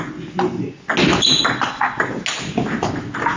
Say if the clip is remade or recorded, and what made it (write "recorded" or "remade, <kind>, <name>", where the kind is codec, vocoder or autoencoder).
recorded